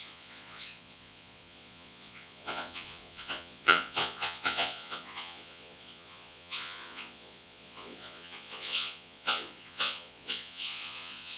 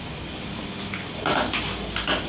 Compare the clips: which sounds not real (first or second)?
first